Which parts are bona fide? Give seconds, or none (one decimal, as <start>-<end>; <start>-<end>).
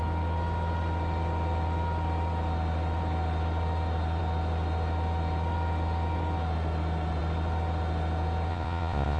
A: 0.0-8.5